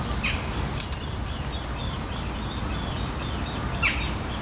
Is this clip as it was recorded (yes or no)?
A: yes